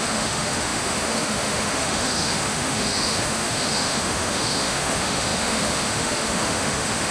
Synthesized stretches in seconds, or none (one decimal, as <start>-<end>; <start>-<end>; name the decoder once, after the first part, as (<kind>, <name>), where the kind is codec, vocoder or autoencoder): 0.0-7.1 (autoencoder, DAC-VAE)